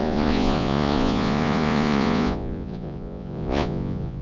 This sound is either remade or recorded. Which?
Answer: remade